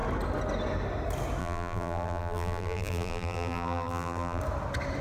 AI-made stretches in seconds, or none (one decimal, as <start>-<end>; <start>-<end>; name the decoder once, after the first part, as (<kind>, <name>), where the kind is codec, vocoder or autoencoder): 1.4-4.4 (vocoder, BigVGAN v2)